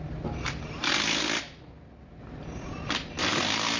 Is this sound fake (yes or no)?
no